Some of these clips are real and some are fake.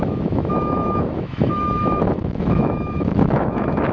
fake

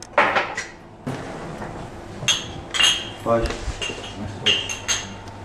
real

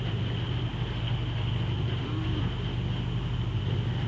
real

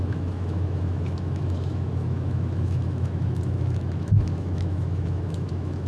fake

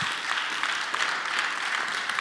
real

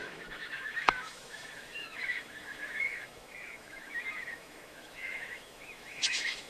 fake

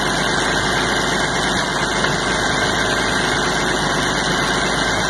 real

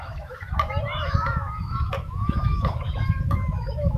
fake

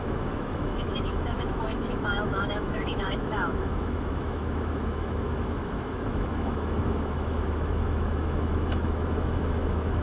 fake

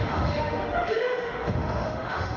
fake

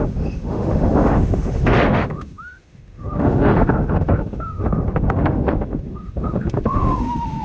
fake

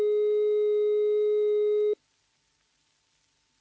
real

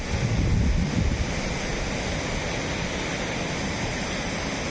real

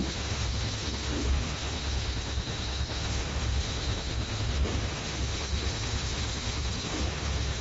fake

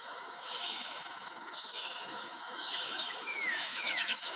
fake